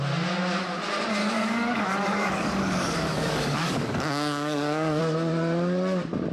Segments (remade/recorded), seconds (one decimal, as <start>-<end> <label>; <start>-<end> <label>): 0.0-1.2 recorded; 1.2-5.0 remade; 5.0-6.3 recorded